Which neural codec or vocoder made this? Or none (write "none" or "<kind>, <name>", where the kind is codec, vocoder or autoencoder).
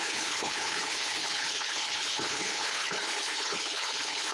codec, HILCodec